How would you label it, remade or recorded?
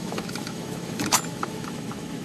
remade